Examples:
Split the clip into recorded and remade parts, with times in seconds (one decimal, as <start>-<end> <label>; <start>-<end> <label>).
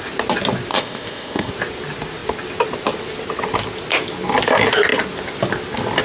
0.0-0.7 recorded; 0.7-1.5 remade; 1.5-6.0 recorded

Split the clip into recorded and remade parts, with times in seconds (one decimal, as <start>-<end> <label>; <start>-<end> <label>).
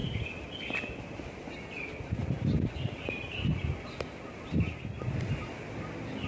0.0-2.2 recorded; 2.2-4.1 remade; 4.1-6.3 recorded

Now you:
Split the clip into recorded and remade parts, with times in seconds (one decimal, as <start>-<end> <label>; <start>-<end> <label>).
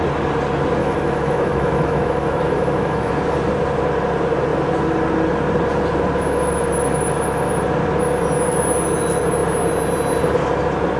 0.0-0.8 recorded; 0.8-3.1 remade; 3.1-11.0 recorded